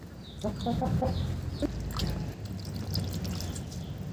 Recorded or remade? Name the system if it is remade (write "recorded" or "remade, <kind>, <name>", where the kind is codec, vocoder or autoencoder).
recorded